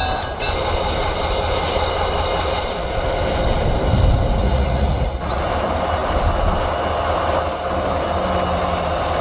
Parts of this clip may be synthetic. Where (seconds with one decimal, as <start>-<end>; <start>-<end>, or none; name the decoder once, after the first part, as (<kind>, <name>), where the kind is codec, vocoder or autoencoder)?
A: 4.4-5.4 (vocoder, Vocos)